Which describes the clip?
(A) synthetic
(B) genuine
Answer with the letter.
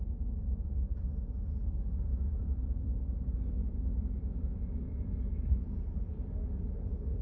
A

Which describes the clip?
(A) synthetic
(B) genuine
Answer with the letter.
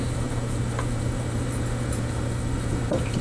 A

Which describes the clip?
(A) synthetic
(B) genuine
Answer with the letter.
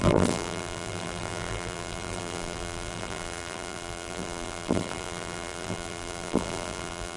A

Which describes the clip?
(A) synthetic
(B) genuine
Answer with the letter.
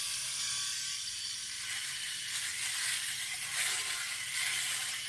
B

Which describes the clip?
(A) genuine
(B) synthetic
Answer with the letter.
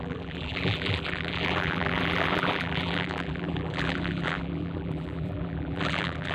B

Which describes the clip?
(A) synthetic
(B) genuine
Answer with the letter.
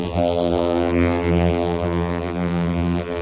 A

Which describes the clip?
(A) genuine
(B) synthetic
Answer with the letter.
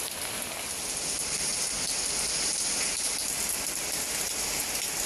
A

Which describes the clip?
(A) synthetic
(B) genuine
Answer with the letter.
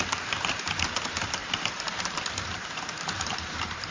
A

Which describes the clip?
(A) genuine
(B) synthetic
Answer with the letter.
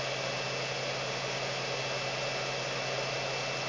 A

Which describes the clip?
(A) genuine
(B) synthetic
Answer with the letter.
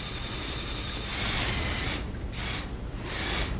A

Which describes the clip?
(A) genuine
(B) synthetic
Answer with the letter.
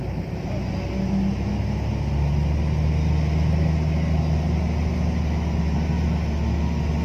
A